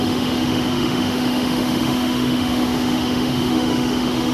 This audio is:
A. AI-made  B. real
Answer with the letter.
A